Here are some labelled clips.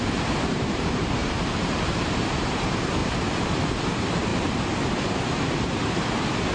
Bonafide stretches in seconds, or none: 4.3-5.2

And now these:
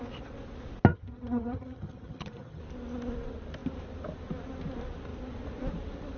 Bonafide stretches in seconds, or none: 0.0-0.9; 2.6-6.2

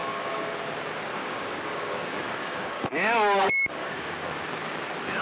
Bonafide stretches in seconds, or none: 0.5-1.2; 4.3-5.2

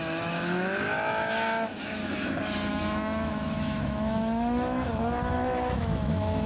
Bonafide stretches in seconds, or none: 2.0-2.7

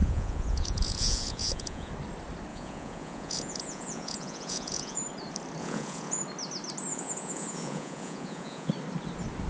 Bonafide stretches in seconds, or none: 1.9-2.5; 5.0-5.6; 6.2-6.9; 8.7-9.5